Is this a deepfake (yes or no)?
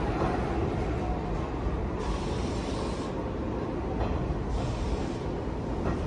no